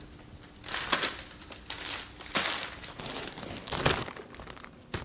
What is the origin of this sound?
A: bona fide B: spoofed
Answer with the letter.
A